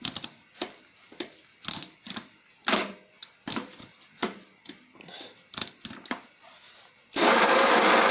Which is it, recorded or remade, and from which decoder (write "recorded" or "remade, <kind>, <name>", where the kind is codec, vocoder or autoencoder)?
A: remade, vocoder, BigVGAN v2